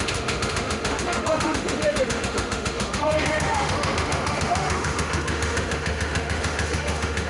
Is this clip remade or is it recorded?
remade